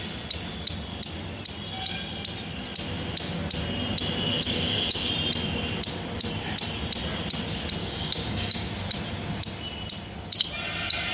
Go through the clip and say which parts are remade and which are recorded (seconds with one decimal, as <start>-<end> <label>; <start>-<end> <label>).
0.0-4.3 recorded; 4.3-5.1 remade; 5.1-7.8 recorded; 7.8-8.7 remade; 8.7-11.1 recorded